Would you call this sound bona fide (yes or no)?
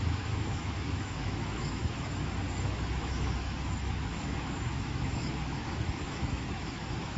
no